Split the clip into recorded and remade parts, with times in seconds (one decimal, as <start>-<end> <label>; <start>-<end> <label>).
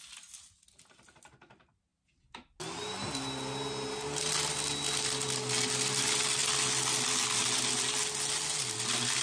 0.0-9.2 recorded